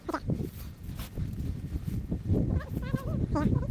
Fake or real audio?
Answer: real